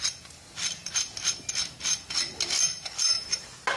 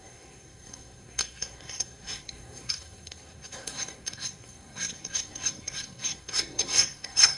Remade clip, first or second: second